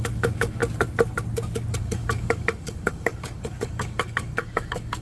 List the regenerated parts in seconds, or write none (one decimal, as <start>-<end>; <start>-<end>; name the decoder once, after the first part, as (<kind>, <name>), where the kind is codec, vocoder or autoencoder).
0.0-0.6 (codec, DAC); 1.8-5.0

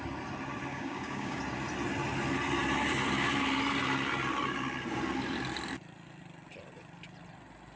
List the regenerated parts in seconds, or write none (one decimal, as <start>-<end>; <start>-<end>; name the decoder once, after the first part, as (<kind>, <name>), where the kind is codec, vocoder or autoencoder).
0.7-1.4 (codec, DAC)

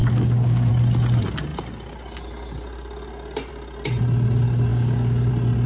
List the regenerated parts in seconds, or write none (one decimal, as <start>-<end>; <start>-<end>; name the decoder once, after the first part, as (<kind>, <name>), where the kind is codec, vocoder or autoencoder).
0.0-0.7 (codec, DAC); 4.7-5.3

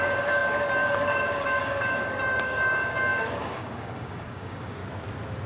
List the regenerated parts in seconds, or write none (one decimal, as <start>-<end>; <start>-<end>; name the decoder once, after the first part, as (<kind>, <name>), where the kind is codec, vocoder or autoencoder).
0.0-4.8 (codec, DAC)

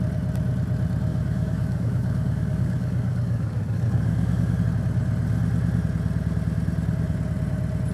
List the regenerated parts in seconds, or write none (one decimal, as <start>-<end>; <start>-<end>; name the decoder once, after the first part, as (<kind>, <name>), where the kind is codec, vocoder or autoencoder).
1.1-4.6 (codec, DAC)

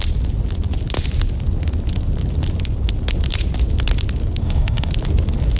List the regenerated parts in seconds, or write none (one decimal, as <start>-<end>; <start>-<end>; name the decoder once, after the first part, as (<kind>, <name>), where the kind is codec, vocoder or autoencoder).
4.4-4.9 (codec, DAC)